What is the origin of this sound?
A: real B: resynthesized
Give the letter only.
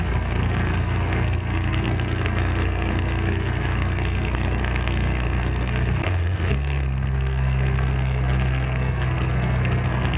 B